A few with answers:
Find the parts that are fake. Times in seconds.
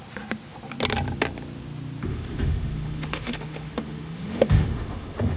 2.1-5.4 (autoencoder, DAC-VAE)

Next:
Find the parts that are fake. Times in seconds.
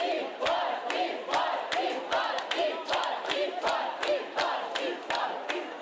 none